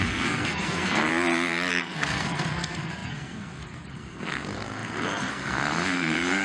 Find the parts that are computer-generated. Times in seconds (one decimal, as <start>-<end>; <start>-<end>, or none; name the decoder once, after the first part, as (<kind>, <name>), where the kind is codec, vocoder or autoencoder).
0.0-1.1 (codec, SNAC); 1.7-6.4